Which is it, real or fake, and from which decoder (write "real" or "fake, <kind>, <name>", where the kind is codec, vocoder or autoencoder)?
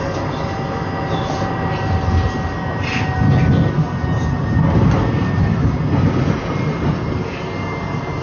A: real